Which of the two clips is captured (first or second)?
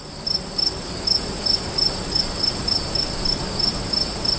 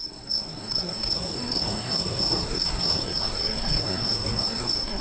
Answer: first